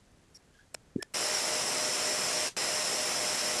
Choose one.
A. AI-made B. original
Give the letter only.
B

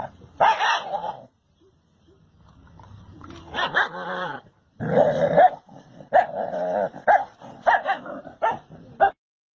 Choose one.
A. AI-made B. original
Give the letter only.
A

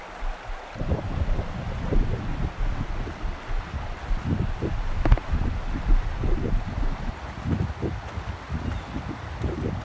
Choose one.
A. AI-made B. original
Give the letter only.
B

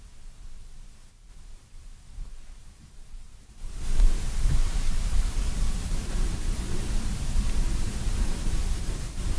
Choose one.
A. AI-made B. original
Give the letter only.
A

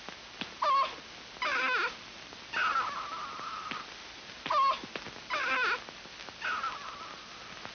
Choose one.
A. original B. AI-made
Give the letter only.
A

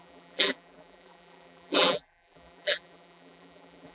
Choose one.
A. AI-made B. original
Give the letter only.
A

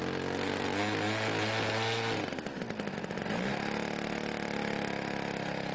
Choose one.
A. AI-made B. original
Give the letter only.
B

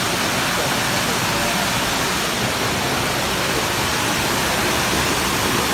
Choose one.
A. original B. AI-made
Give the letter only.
A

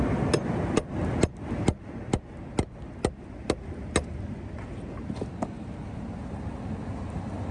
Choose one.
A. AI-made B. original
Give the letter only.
B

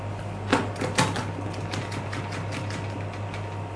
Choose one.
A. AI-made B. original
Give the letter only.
B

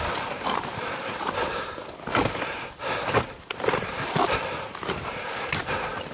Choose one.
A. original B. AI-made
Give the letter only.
B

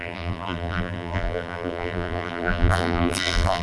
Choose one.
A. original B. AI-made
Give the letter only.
B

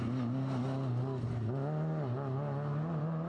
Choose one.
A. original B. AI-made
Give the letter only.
A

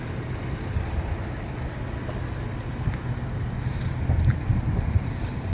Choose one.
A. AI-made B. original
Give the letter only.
B